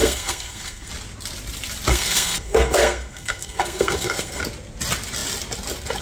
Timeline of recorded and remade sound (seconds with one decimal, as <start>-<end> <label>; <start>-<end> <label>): 0.0-0.9 remade; 0.9-1.9 recorded; 1.9-4.4 remade; 4.4-6.0 recorded

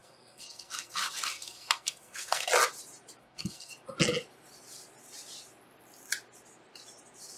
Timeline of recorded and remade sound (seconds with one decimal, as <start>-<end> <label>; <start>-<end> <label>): 0.0-2.5 remade; 2.5-3.2 recorded; 3.2-3.7 remade; 3.7-7.4 recorded